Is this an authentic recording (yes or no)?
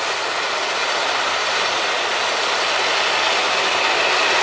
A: yes